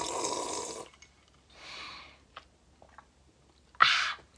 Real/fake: real